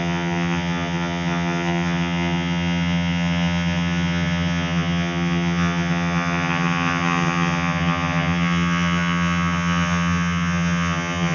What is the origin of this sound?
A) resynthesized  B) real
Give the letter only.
A